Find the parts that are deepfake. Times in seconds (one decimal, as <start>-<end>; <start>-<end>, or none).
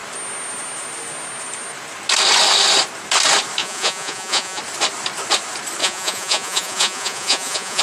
3.6-4.6; 5.8-7.8